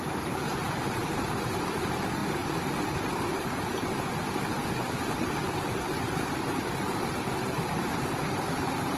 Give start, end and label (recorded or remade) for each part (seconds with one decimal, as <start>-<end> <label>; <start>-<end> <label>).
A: 0.0-9.0 remade